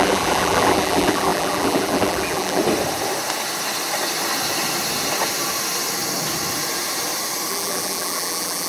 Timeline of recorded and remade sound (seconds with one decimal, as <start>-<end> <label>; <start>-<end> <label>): 0.0-2.6 remade; 2.6-7.5 recorded; 7.5-8.7 remade